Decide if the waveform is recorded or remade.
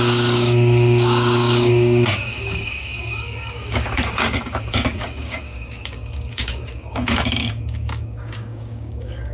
remade